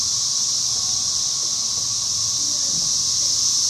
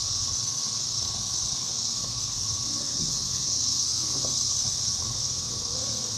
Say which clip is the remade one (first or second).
second